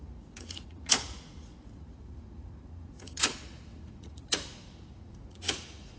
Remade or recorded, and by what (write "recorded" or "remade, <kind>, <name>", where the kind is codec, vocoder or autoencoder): remade, vocoder, Vocos